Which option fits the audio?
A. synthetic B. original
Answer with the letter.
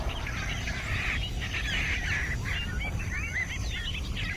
B